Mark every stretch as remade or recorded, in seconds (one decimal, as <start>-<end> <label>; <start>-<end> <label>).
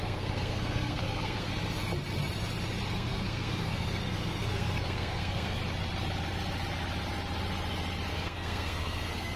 0.0-1.5 remade; 1.5-2.9 recorded; 2.9-5.6 remade; 5.6-8.1 recorded; 8.1-9.4 remade